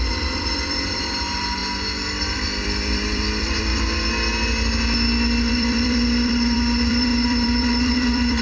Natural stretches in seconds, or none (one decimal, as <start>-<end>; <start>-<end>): 1.6-2.2; 3.7-5.5